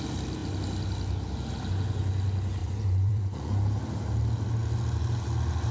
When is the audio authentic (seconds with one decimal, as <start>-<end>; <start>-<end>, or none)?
0.0-2.6; 3.5-5.7